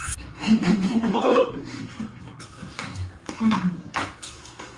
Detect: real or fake fake